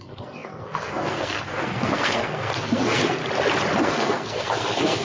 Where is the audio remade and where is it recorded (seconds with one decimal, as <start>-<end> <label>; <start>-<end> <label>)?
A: 0.0-3.2 remade; 3.2-3.8 recorded; 3.8-5.0 remade